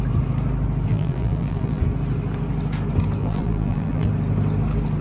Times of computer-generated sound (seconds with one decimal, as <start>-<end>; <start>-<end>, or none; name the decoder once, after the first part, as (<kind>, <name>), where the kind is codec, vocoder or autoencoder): 0.9-1.8 (vocoder, BigVGAN v2); 3.2-4.1